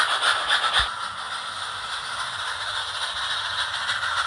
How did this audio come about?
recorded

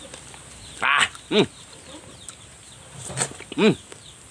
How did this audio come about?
recorded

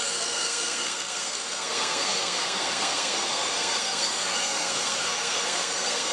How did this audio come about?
remade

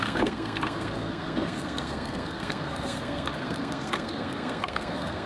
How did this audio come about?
remade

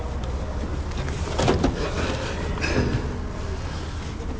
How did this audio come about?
recorded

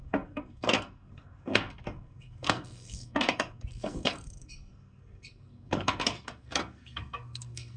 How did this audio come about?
remade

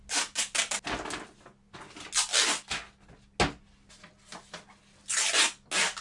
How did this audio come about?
recorded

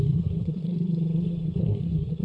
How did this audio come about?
remade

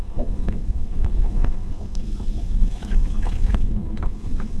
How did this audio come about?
remade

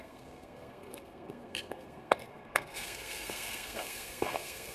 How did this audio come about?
remade